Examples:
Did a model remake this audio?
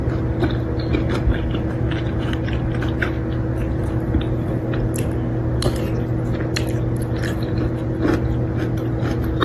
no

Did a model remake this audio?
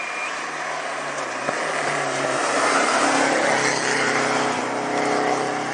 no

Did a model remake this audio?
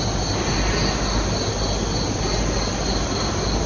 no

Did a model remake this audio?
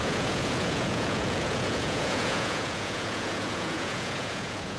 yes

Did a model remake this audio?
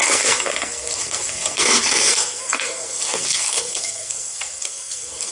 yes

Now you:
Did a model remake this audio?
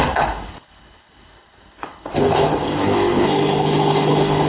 yes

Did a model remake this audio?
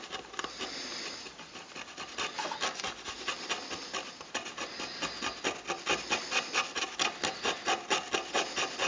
no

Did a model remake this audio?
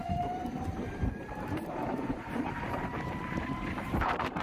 yes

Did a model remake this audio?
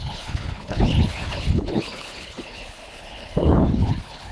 yes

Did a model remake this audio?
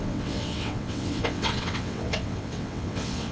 yes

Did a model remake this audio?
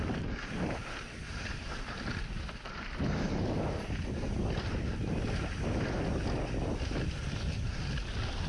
no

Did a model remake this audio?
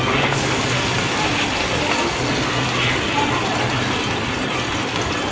no